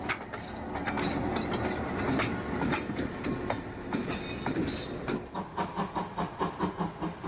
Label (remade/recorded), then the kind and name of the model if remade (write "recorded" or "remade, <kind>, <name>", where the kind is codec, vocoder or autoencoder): recorded